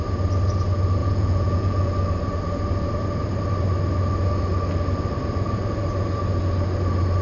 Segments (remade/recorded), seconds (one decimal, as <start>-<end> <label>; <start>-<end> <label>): 0.0-1.0 recorded; 1.0-1.9 remade; 1.9-7.2 recorded

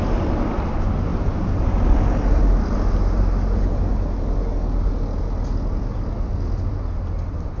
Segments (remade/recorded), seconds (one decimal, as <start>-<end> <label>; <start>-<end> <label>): 0.0-1.1 recorded; 1.1-2.4 remade; 2.4-7.6 recorded

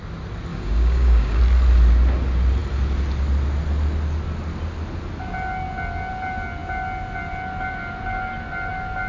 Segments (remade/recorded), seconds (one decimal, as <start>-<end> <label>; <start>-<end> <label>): 0.0-0.5 recorded; 0.5-1.4 remade; 1.4-9.1 recorded

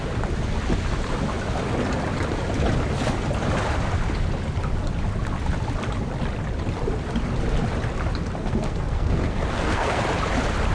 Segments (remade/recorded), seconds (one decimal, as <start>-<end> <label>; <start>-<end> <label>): 0.0-8.4 recorded; 8.4-10.0 remade; 10.0-10.7 recorded

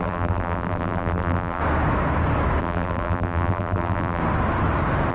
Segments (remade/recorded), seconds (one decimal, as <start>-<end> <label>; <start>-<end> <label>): 0.0-1.6 remade; 1.6-2.6 recorded; 2.6-4.2 remade; 4.2-5.1 recorded

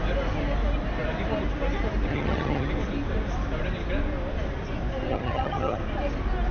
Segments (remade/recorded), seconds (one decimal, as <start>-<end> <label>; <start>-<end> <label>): 0.0-2.1 recorded; 2.1-2.7 remade; 2.7-5.1 recorded; 5.1-5.8 remade; 5.8-6.5 recorded